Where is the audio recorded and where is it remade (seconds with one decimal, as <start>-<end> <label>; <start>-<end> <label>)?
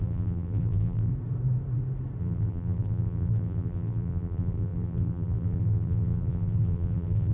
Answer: 0.0-1.1 remade; 1.1-2.2 recorded; 2.2-7.3 remade